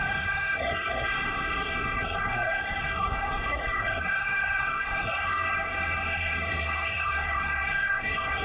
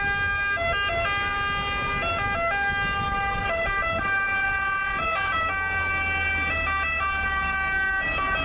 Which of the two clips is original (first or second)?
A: second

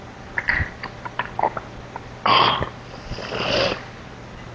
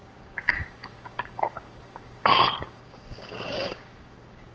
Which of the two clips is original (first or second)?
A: first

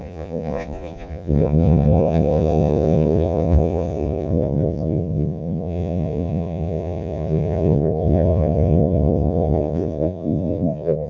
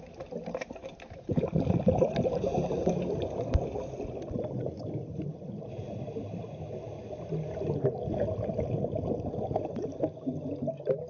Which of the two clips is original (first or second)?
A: second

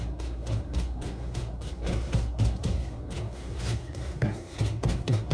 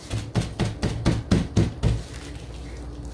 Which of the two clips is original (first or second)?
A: second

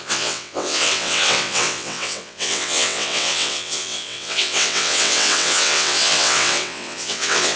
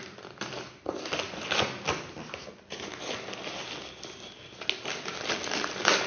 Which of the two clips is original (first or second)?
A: second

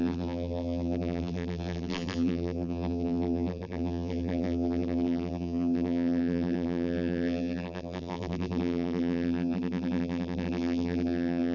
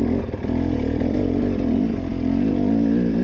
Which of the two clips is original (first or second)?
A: second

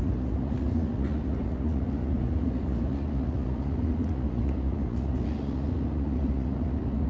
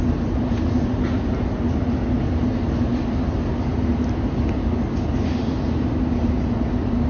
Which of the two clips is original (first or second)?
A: second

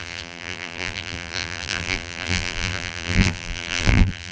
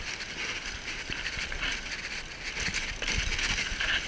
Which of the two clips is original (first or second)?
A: second